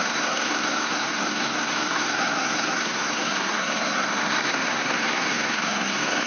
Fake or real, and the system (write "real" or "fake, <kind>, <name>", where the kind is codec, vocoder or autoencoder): fake, codec, SNAC